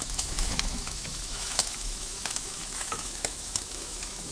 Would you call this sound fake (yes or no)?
yes